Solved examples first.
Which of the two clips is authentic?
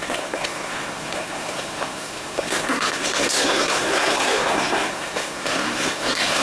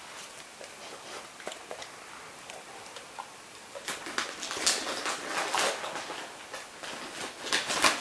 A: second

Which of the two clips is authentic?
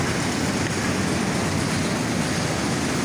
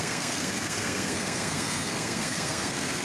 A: first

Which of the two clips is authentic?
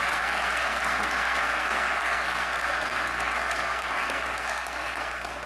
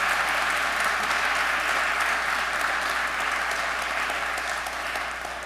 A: second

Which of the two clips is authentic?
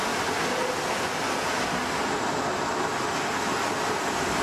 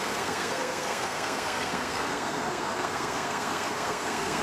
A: first